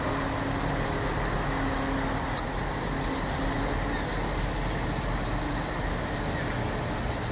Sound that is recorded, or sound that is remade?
recorded